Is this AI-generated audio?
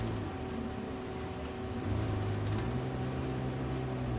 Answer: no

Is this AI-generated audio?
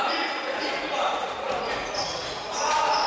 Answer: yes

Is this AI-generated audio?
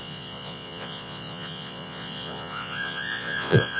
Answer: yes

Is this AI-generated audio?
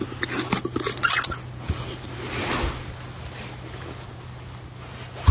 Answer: no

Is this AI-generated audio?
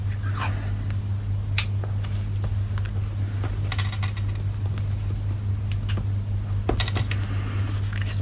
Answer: no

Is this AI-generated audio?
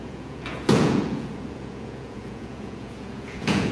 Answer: yes